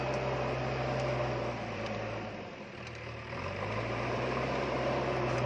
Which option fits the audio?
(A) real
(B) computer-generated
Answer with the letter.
B